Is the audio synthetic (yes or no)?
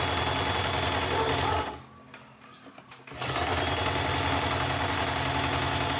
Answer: no